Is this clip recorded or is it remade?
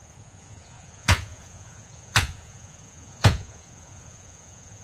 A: remade